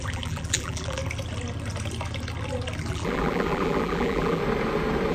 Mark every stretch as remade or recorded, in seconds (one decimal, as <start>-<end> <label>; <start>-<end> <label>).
0.0-1.0 remade; 1.0-2.9 recorded; 2.9-4.4 remade; 4.4-5.1 recorded